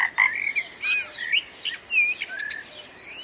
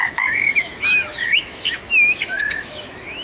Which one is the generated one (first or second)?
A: second